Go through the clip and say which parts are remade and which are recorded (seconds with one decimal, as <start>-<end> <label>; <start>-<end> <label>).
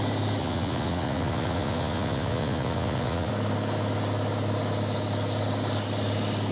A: 0.0-0.4 recorded; 0.4-3.3 remade; 3.3-6.5 recorded